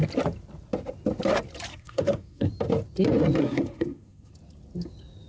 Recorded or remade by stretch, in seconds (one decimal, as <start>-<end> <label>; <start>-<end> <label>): 0.0-1.7 recorded; 1.7-2.5 remade; 2.5-3.4 recorded; 3.4-4.3 remade; 4.3-5.3 recorded